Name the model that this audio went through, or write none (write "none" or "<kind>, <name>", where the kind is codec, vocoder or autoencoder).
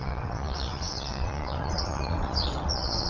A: vocoder, WaveNeXt